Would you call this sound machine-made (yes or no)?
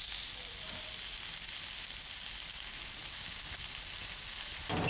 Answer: no